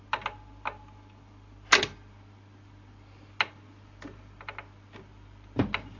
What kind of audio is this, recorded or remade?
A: recorded